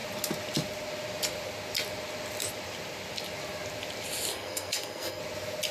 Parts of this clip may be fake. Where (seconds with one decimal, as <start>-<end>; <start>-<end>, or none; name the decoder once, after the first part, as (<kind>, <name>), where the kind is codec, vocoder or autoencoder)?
4.3-5.2 (codec, SNAC)